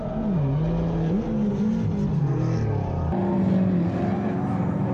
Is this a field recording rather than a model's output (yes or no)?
yes